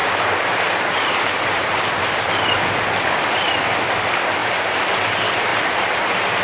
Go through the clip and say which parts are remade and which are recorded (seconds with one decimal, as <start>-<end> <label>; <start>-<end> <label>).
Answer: 0.0-1.6 remade; 1.6-4.4 recorded; 4.4-4.9 remade; 4.9-5.5 recorded; 5.5-6.0 remade; 6.0-6.4 recorded